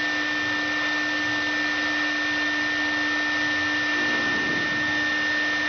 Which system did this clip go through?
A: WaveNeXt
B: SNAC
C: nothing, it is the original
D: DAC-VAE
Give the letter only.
C